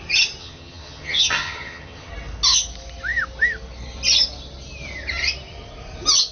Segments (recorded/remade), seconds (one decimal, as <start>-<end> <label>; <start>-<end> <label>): 0.0-0.4 recorded; 0.4-2.1 remade; 2.1-6.3 recorded